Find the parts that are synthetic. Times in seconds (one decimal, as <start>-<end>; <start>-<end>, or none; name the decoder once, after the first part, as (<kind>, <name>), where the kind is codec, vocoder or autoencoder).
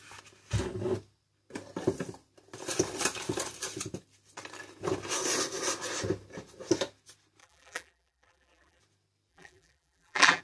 7.4-8.8 (vocoder, BigVGAN v2); 9.3-10.4